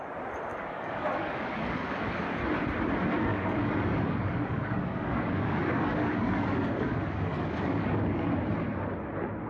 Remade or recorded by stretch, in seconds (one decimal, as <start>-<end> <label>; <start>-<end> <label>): 0.0-0.5 recorded; 0.5-2.4 remade; 2.4-3.3 recorded; 3.3-8.3 remade; 8.3-9.5 recorded